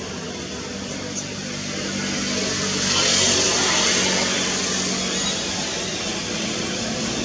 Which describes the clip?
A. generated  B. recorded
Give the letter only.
B